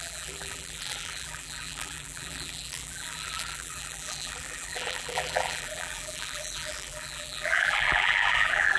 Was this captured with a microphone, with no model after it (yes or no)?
no